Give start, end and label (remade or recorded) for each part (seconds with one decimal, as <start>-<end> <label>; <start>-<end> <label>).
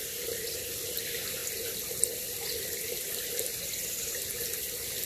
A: 0.0-5.1 recorded